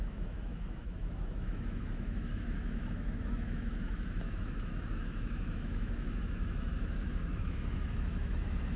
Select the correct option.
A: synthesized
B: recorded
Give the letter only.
A